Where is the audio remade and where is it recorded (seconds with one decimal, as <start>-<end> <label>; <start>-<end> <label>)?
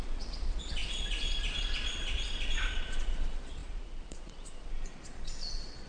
0.0-5.9 remade